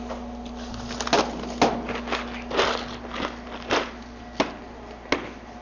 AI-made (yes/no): no